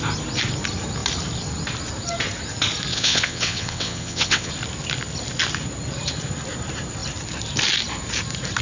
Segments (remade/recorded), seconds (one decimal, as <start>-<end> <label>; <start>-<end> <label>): 0.0-2.9 recorded; 2.9-4.5 remade; 4.5-8.6 recorded